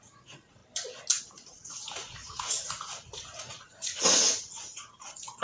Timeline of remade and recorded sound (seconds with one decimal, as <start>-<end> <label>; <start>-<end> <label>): 0.0-0.6 remade; 0.6-1.2 recorded; 1.2-5.4 remade